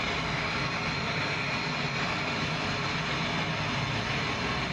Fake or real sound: real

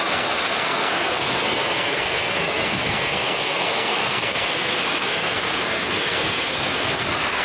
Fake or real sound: fake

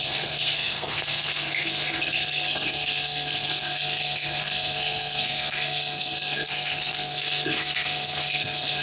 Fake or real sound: fake